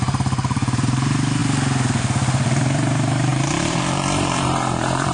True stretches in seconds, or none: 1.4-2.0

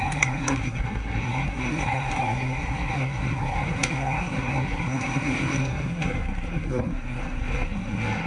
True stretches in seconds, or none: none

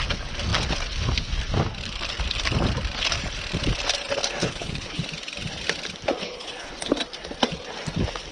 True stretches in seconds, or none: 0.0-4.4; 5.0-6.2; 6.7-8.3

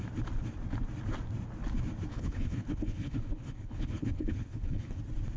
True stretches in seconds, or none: 0.0-2.1; 5.0-5.4

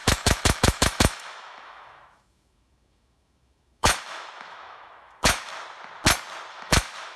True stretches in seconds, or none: 5.5-6.5